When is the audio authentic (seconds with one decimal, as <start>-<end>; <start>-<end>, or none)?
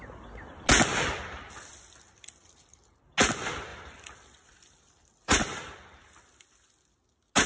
0.0-3.7; 6.4-7.5